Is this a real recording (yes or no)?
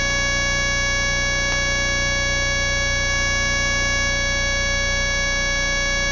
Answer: yes